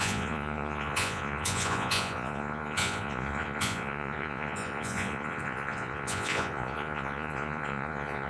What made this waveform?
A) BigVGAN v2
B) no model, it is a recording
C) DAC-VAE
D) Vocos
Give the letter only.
D